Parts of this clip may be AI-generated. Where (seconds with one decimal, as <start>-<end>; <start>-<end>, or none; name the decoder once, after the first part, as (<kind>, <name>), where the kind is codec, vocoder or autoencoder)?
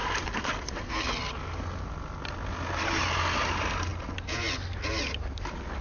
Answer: none